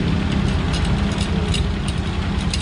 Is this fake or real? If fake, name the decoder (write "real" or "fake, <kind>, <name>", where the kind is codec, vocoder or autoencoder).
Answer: real